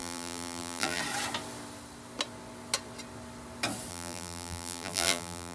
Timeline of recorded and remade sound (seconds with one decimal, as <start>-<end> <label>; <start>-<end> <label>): 0.0-1.0 remade; 1.0-3.9 recorded; 3.9-5.5 remade